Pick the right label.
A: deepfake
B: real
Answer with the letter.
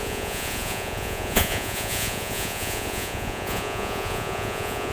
A